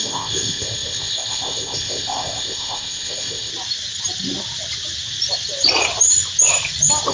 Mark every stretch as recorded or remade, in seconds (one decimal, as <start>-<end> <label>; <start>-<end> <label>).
0.0-3.5 remade; 3.5-7.1 recorded